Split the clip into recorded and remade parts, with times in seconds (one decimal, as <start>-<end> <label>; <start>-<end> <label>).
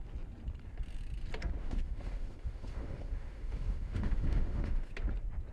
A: 0.0-1.6 recorded; 1.6-4.9 remade; 4.9-5.5 recorded